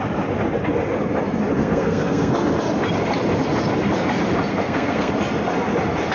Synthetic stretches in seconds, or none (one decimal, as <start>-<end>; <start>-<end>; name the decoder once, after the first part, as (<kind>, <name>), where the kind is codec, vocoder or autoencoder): 1.6-2.3 (codec, SNAC); 4.5-5.1